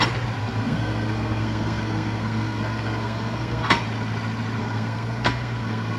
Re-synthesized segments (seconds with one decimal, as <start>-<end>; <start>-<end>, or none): 0.4-3.8; 4.6-6.0